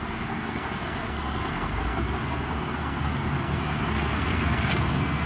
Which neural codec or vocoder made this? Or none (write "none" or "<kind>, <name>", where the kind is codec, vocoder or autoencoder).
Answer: codec, SNAC